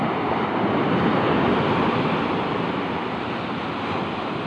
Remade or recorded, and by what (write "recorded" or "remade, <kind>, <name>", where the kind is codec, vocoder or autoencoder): recorded